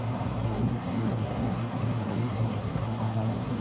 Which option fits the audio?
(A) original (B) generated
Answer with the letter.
B